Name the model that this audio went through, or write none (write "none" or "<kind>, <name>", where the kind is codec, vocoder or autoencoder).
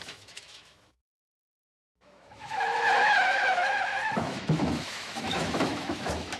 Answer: autoencoder, DAC-VAE